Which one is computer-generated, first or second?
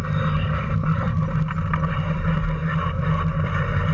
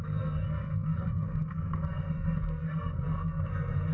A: second